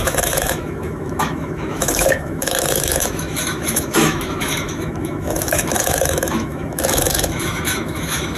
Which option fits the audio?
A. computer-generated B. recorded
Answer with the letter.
A